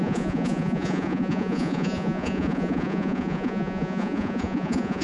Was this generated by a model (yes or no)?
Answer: yes